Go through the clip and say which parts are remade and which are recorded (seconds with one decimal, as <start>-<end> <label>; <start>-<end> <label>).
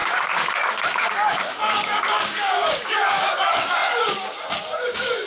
0.0-5.3 remade